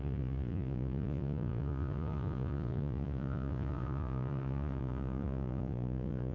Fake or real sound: fake